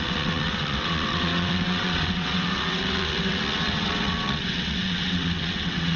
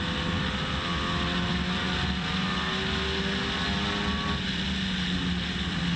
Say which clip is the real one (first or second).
second